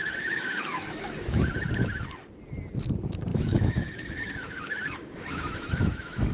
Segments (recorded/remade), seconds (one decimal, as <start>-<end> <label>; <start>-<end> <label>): 0.0-1.5 remade; 1.5-3.3 recorded; 3.3-6.3 remade